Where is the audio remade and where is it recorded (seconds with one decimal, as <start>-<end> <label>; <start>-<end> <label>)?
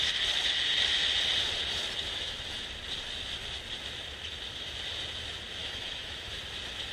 0.0-2.1 recorded; 2.1-2.7 remade; 2.7-5.6 recorded; 5.6-6.4 remade; 6.4-6.9 recorded